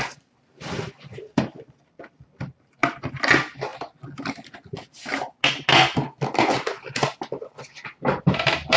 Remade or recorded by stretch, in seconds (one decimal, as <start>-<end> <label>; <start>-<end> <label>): 0.0-2.8 remade; 2.8-3.3 recorded; 3.3-3.7 remade; 3.7-8.2 recorded; 8.2-8.8 remade